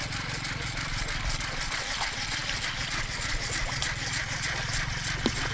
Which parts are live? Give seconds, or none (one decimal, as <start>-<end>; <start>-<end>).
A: 0.0-5.5